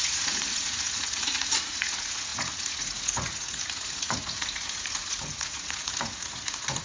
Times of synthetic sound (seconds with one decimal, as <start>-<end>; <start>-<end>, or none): 0.0-6.8